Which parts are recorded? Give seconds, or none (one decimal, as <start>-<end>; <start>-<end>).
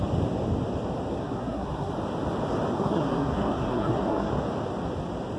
0.0-1.1; 1.9-2.7; 4.3-5.4